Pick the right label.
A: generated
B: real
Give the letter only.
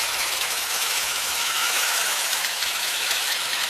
A